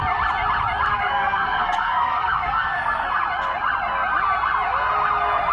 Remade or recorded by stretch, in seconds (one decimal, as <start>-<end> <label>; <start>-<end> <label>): 0.0-0.9 recorded; 0.9-3.1 remade; 3.1-5.5 recorded